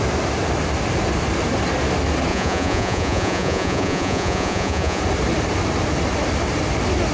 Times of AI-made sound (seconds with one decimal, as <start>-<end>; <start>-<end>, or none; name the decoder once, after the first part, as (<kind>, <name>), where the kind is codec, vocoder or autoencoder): 2.3-5.0 (vocoder, Vocos)